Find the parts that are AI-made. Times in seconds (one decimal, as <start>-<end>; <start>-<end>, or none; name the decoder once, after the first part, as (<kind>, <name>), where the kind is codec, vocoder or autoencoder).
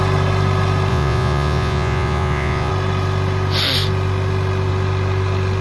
0.9-2.7 (vocoder, Vocos)